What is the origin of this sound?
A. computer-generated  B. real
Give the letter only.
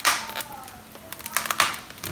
B